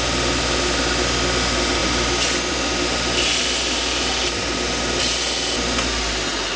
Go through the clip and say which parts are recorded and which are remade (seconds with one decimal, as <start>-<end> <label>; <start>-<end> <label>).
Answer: 0.0-6.6 recorded